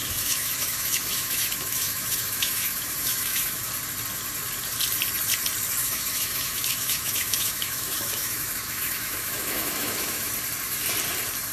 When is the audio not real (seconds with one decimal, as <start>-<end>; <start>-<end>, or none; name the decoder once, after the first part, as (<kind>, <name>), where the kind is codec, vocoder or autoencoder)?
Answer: 0.0-3.7 (autoencoder, DAC-VAE); 5.8-10.3